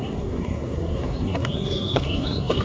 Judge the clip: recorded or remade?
remade